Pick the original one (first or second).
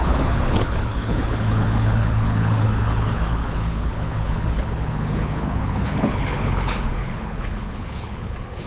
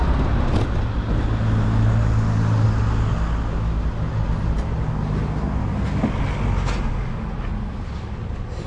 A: second